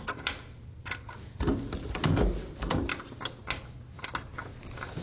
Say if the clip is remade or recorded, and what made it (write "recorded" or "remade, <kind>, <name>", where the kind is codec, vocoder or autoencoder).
recorded